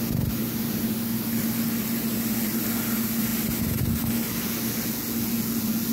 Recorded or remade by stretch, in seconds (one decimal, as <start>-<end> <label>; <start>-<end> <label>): 0.0-5.9 recorded